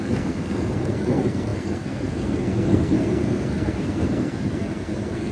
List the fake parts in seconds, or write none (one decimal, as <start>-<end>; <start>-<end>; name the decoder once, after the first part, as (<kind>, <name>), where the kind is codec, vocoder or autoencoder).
0.0-5.3 (codec, SNAC)